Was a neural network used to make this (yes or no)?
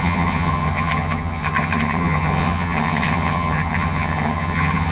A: yes